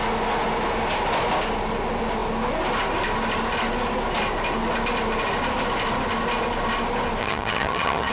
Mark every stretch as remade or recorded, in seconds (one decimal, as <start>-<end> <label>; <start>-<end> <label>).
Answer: 0.0-7.2 recorded; 7.2-8.1 remade